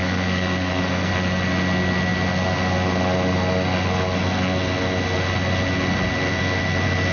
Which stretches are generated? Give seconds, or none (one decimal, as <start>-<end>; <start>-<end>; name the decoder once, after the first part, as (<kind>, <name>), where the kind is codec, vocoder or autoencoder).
0.0-1.1 (codec, SNAC)